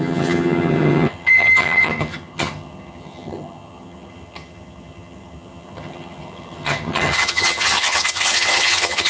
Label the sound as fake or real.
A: fake